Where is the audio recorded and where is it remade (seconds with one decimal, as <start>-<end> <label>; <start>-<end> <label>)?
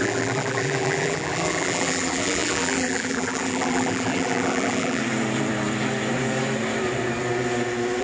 0.0-5.0 remade; 5.0-8.0 recorded